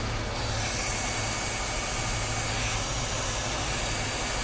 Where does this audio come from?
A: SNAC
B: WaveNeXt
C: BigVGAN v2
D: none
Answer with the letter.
D